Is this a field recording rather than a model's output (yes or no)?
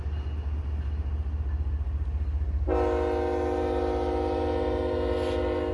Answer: yes